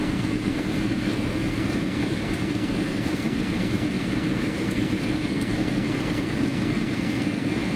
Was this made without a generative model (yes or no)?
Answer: no